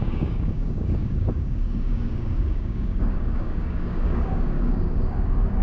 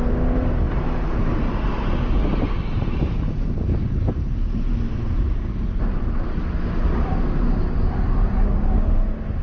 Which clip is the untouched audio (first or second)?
second